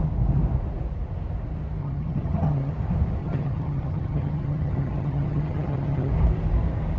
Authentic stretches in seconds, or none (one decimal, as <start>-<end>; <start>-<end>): 0.0-1.8; 2.7-3.2; 6.1-7.0